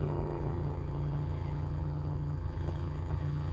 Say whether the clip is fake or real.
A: fake